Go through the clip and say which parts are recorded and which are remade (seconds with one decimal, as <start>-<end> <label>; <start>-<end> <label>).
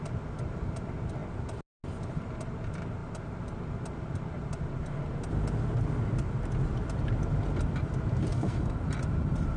0.0-8.3 recorded; 8.3-8.8 remade; 8.8-9.6 recorded